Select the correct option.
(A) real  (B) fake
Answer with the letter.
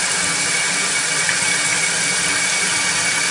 A